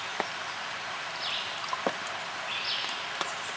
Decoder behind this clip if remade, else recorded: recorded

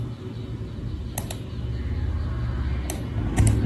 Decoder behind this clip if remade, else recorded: recorded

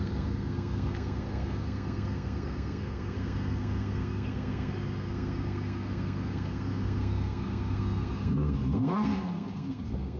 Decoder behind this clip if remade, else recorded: remade, codec, SNAC